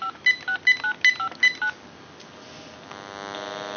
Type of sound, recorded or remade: recorded